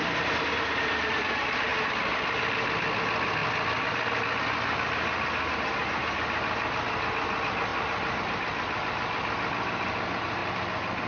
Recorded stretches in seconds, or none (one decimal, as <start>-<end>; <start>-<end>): 0.0-11.1